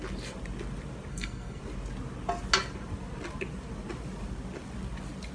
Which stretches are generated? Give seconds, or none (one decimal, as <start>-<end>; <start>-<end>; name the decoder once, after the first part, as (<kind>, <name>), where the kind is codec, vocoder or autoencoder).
1.1-1.6 (codec, SNAC)